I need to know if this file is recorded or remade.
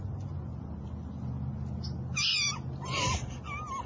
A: recorded